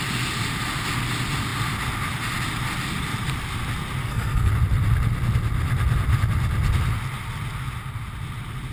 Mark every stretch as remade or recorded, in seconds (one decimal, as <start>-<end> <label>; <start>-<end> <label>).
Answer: 0.0-4.0 recorded; 4.0-4.5 remade; 4.5-8.7 recorded